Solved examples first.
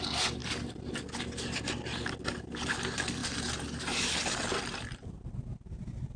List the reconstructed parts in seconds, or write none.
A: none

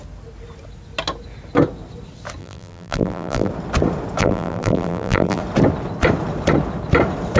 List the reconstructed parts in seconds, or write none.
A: 2.4-3.5 (vocoder, BigVGAN v2); 4.2-5.4

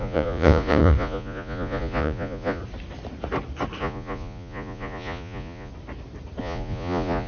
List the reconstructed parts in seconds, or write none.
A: 0.0-2.6 (vocoder, Vocos); 3.8-5.7; 6.4-7.3

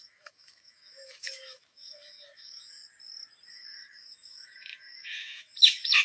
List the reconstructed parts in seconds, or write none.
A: 0.0-2.8 (autoencoder, DAC-VAE); 3.5-6.0